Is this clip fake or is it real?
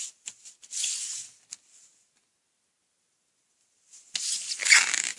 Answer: real